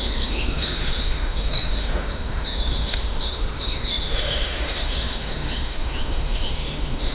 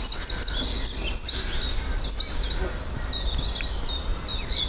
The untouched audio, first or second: second